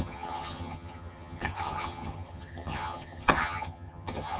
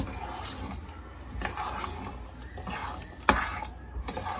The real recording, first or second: second